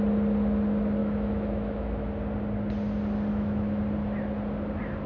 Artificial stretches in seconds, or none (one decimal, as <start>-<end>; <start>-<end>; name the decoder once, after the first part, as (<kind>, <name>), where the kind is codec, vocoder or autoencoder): 1.0-2.1 (autoencoder, DAC-VAE); 3.3-3.8